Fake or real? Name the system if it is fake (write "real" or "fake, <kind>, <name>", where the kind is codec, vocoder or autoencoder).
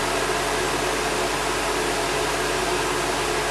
real